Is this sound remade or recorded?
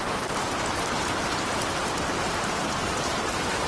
remade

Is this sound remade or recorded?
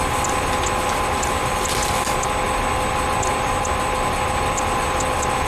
recorded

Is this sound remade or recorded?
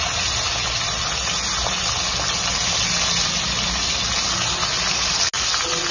recorded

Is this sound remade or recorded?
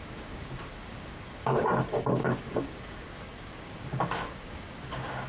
remade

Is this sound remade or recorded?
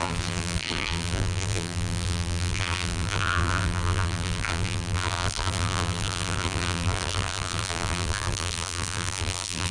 remade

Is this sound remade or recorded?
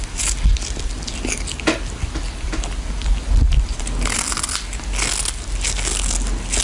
recorded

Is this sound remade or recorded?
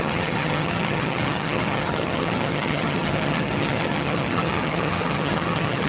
remade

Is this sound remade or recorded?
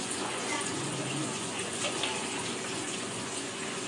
remade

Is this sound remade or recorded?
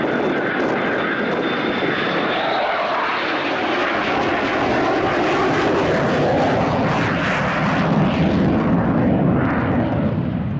recorded